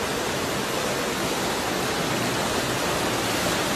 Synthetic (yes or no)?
no